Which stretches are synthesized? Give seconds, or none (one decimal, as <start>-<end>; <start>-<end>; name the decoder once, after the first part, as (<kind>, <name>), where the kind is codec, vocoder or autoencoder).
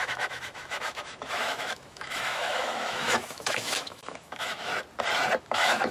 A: 0.0-4.7 (autoencoder, DAC-VAE); 5.4-5.9